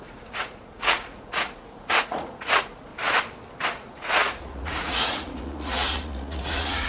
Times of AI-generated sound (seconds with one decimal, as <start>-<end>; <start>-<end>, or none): 0.0-2.9; 3.7-6.9